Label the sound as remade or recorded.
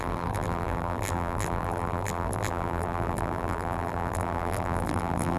remade